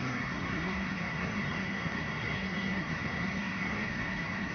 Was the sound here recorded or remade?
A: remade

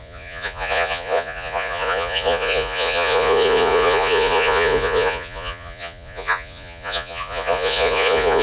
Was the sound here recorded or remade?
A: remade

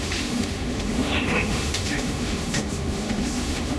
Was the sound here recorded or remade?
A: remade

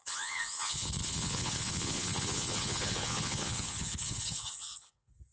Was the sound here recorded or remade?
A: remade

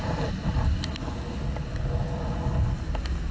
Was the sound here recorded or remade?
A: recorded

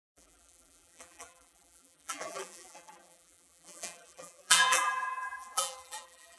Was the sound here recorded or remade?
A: remade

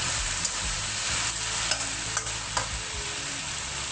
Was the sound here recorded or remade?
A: recorded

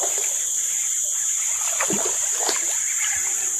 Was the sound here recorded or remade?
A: recorded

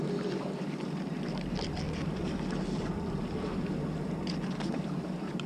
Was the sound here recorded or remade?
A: recorded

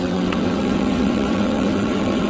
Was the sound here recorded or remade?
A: remade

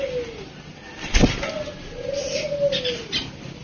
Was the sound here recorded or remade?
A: recorded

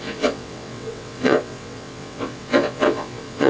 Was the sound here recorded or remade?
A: remade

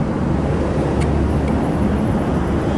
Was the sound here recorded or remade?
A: recorded